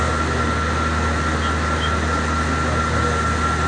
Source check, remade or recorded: recorded